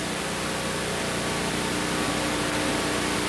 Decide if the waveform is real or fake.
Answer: real